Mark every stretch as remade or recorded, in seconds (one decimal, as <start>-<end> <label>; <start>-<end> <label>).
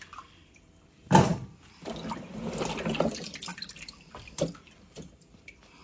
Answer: 0.0-5.8 remade